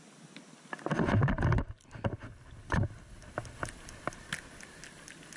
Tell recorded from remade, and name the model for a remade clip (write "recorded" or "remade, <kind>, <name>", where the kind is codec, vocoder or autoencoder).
recorded